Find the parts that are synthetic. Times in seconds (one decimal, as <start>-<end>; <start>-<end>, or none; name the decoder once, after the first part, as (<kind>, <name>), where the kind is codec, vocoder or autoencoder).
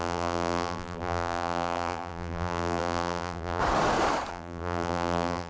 0.0-3.6 (vocoder, BigVGAN v2); 4.3-5.5